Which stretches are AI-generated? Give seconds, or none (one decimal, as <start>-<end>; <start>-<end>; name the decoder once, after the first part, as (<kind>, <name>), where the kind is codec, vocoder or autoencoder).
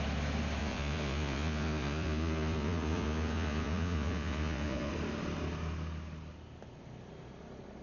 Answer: 0.6-4.9 (vocoder, Vocos)